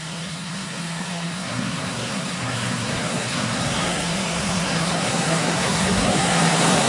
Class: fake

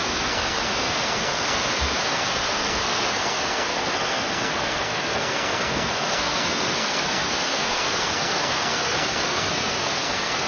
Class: fake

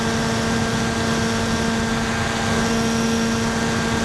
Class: real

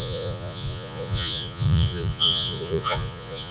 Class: fake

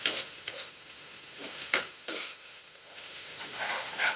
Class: fake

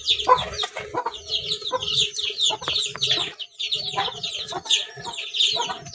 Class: real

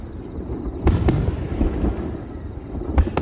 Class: real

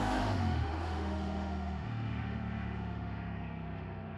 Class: fake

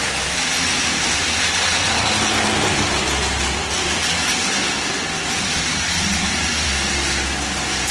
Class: real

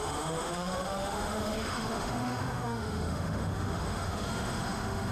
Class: fake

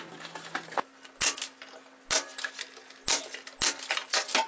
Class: real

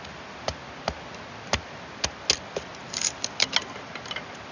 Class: real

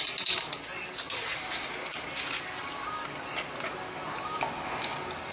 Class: real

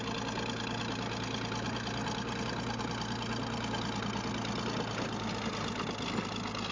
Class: real